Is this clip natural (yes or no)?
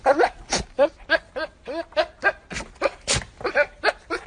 yes